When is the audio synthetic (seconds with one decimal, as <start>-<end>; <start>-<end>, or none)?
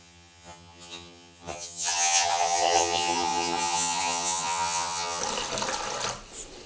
0.0-5.2